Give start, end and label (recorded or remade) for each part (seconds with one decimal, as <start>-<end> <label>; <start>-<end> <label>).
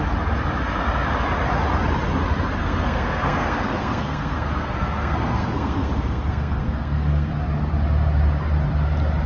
0.0-2.6 recorded; 2.6-7.3 remade; 7.3-9.3 recorded